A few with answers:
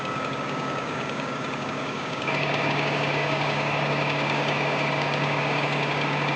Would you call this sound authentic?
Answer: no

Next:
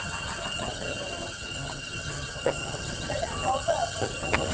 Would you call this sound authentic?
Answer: no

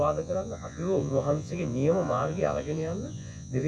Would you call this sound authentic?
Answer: no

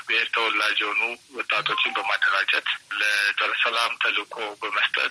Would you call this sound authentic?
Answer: yes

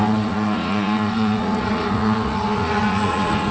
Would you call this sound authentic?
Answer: no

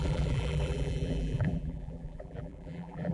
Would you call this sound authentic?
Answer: no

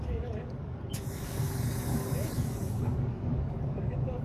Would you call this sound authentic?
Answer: no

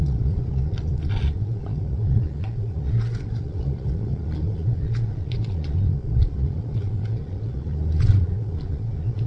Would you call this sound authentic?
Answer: no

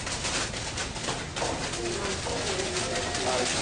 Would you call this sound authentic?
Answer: yes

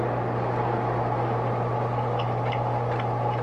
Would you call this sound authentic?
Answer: yes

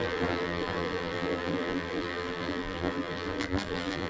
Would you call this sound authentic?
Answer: no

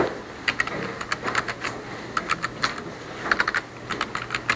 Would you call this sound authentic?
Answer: yes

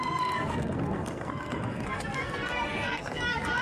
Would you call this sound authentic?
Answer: no